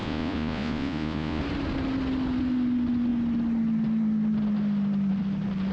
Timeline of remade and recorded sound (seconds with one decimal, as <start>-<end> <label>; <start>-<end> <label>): 0.0-1.4 remade; 1.4-5.7 recorded